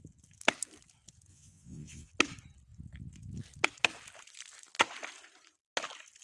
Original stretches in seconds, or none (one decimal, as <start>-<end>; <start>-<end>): 0.0-1.3; 2.1-6.2